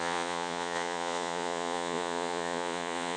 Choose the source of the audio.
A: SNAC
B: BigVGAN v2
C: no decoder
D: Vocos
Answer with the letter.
D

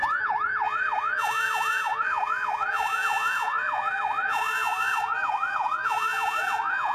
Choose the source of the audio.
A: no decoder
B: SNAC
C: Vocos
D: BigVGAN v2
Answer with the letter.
C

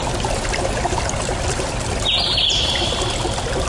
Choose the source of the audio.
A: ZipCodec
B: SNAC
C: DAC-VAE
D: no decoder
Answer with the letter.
D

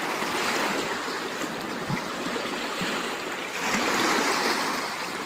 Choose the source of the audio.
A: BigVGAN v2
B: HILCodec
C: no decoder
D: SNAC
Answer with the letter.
C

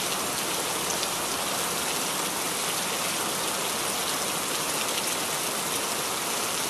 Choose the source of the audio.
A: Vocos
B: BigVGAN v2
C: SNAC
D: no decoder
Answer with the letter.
D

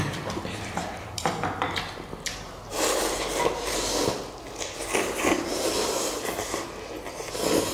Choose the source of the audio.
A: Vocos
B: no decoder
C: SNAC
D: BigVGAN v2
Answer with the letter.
B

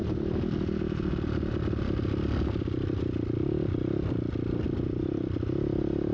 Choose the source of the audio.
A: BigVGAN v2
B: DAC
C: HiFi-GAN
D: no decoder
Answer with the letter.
D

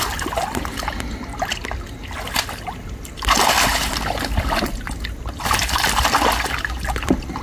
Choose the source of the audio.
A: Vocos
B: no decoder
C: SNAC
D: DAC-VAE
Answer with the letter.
B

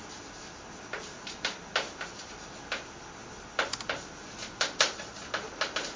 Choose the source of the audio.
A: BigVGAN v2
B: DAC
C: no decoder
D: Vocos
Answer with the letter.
C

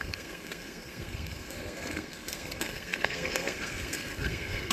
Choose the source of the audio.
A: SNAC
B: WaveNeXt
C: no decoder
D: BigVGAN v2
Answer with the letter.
A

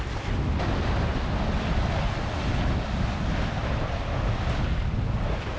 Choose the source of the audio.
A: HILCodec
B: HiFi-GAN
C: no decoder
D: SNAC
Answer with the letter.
C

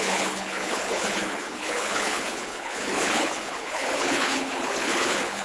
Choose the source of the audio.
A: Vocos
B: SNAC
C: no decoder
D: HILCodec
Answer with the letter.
D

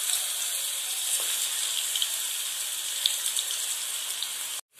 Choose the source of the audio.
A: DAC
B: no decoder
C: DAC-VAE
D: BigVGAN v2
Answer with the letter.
B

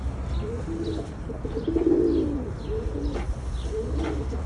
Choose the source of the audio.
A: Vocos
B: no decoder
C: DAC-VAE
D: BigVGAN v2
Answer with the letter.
B